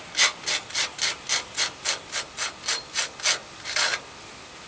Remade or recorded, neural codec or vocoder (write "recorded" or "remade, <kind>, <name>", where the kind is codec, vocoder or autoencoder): recorded